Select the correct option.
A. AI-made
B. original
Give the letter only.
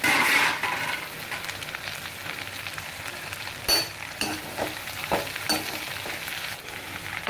B